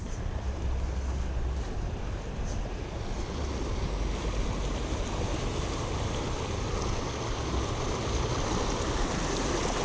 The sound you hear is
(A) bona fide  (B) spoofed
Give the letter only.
A